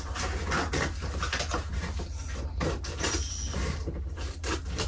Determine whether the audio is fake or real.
real